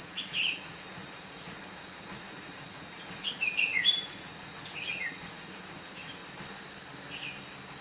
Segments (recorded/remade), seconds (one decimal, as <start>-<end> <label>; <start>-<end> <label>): 0.0-6.2 remade; 6.2-7.8 recorded